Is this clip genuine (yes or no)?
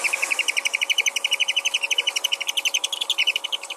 yes